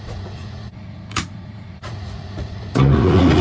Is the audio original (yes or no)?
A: no